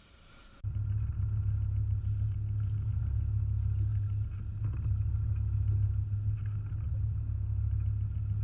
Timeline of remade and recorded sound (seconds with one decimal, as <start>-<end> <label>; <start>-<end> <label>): 0.0-8.4 recorded